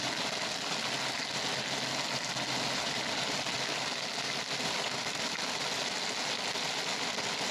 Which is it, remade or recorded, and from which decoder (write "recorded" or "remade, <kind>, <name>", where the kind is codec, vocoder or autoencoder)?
recorded